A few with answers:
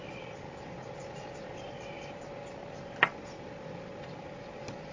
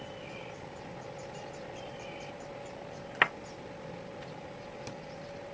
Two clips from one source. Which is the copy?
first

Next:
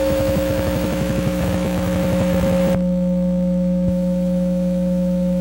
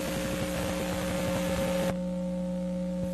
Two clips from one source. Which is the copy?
first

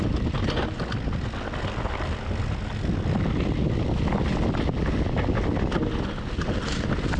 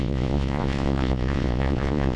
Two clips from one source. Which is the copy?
second